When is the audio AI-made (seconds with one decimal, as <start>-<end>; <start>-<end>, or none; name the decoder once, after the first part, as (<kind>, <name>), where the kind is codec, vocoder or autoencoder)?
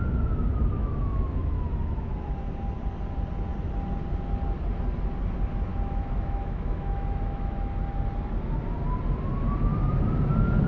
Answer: 0.8-2.5 (autoencoder, DAC-VAE); 5.7-7.7